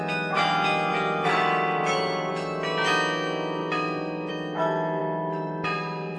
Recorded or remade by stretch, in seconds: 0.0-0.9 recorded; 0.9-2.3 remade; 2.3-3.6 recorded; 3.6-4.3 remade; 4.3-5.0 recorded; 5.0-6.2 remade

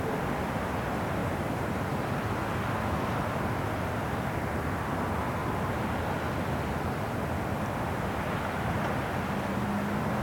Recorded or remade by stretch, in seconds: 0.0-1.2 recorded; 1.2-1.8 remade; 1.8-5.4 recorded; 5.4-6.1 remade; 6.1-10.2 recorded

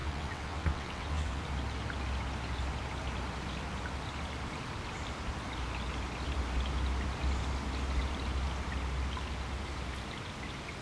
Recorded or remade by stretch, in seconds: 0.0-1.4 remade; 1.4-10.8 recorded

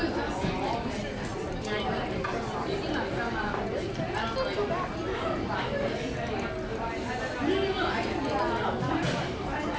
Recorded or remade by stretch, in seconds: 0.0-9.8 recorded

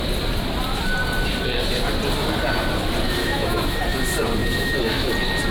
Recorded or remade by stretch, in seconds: 0.0-3.2 recorded; 3.2-3.8 remade; 3.8-4.4 recorded; 4.4-5.1 remade; 5.1-5.5 recorded